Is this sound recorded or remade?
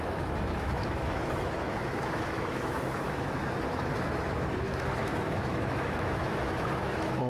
remade